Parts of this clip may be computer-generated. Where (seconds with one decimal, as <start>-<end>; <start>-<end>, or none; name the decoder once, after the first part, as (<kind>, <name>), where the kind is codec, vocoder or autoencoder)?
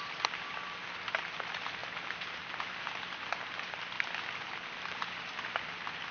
none